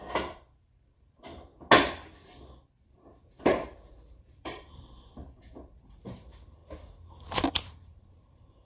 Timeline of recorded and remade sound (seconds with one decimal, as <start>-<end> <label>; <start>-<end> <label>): 0.0-1.3 remade; 1.3-2.8 recorded; 2.8-6.6 remade; 6.6-7.5 recorded; 7.5-8.6 remade